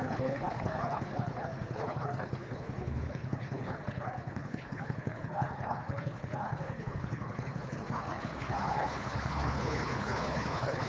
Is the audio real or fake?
fake